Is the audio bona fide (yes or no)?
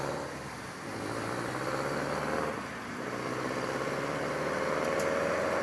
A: yes